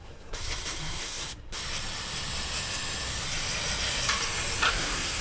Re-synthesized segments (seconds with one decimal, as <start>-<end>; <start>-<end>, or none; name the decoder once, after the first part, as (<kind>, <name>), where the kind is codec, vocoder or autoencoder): 0.0-1.6 (codec, SNAC); 4.7-5.2